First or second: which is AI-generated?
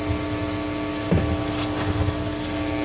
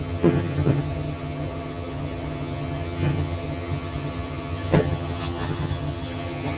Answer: second